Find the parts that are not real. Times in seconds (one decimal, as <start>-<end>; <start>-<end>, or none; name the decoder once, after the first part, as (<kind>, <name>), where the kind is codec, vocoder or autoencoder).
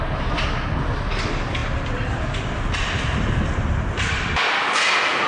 none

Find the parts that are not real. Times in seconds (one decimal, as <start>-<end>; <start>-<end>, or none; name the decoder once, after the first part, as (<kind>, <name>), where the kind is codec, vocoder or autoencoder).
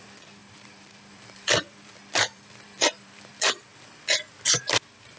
0.4-3.3 (vocoder, BigVGAN v2)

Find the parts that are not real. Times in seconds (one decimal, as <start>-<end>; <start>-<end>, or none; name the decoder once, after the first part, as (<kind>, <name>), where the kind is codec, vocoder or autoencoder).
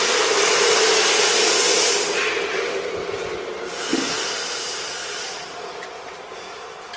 none